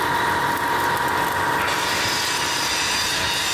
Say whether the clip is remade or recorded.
recorded